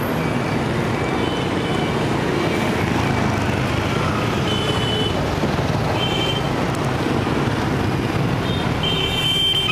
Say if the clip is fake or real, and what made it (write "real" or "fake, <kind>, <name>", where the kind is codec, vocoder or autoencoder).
real